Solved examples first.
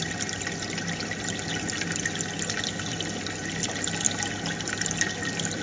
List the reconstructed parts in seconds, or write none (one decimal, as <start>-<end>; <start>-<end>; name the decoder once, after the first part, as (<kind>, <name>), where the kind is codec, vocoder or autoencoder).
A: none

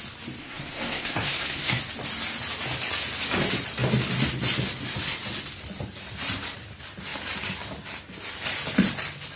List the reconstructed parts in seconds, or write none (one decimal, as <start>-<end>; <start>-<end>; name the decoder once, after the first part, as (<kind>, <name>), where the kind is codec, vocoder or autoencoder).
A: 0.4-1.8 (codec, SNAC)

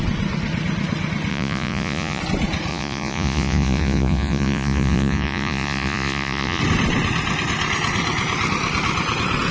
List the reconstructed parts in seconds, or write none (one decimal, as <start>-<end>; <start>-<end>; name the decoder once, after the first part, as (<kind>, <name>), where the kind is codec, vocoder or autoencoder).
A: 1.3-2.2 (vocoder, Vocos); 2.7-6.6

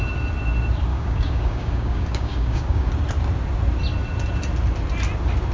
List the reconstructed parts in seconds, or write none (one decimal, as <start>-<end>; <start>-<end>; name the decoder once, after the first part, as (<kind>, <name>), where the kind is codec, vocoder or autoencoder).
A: 0.9-2.9 (codec, DAC)